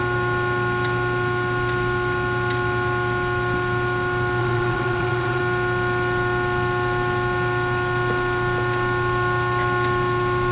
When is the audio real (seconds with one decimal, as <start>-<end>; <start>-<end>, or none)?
0.0-4.4; 5.4-10.5